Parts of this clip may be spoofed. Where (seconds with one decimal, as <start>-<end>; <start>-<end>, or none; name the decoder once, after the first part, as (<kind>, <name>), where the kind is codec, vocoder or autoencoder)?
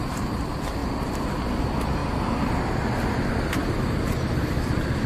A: 0.0-0.8 (vocoder, BigVGAN v2); 1.6-2.0; 3.3-5.1